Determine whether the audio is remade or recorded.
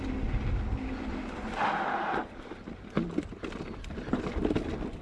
recorded